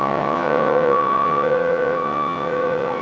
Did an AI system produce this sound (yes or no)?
yes